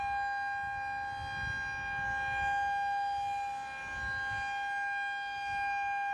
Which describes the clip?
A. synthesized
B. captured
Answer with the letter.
B